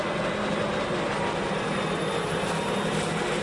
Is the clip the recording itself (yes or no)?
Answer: yes